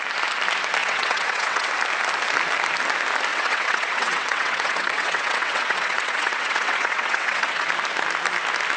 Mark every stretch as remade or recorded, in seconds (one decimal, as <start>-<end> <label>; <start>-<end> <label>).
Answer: 0.0-0.8 recorded; 0.8-1.7 remade; 1.7-3.3 recorded; 3.3-7.7 remade; 7.7-8.8 recorded